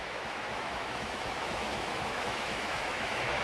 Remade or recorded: remade